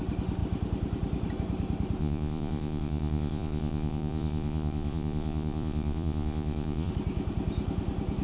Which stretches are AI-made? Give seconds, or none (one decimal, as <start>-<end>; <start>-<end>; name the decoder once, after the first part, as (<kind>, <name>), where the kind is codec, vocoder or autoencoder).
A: 2.0-6.9 (vocoder, Vocos)

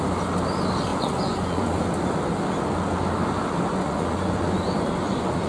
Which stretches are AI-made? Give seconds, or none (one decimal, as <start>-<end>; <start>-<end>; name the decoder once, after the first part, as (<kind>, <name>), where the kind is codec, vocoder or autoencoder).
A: 0.9-1.8 (vocoder, Vocos); 3.7-5.5